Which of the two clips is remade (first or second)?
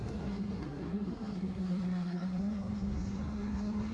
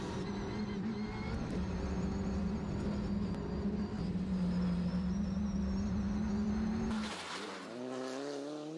first